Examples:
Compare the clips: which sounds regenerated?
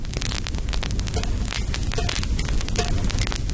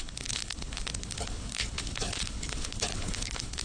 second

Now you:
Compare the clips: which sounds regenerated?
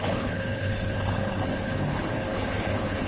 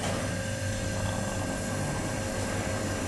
first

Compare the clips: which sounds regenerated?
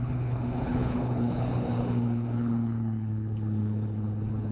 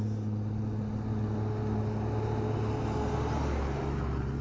first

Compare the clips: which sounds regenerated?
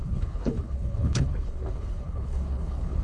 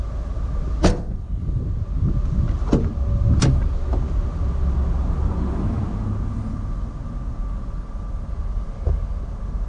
first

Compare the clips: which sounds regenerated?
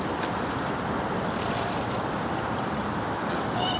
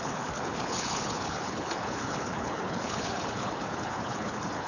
second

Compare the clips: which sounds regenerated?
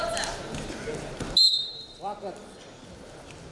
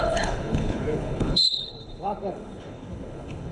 second